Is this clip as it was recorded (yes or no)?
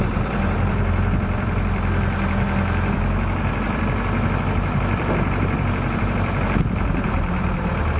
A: no